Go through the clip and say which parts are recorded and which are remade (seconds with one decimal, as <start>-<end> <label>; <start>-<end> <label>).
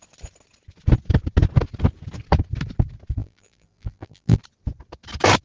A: 0.0-3.2 recorded; 3.2-4.4 remade; 4.4-5.4 recorded